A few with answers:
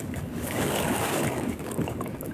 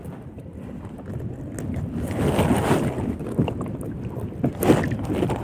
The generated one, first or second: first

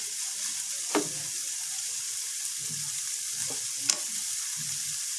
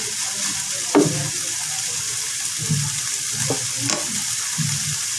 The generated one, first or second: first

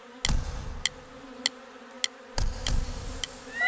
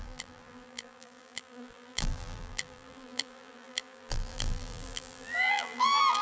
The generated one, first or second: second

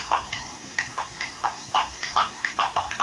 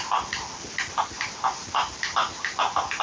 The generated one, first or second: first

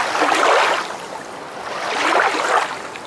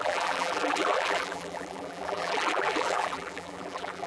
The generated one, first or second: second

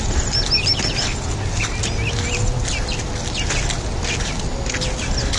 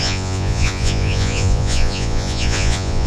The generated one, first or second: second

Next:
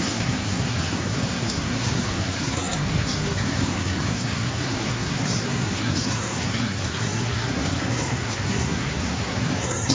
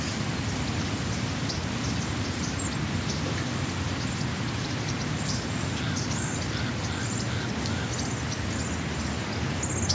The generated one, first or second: first